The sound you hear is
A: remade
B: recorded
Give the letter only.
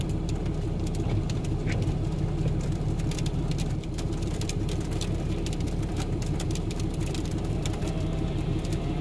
A